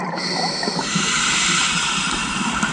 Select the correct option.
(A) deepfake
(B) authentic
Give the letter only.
B